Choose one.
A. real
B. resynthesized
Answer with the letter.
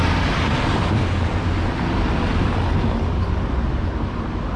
A